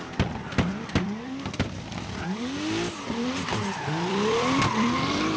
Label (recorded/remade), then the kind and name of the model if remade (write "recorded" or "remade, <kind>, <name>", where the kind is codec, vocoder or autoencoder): remade, vocoder, BigVGAN v2